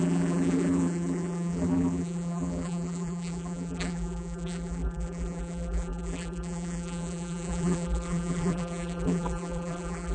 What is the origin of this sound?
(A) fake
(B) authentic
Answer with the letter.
A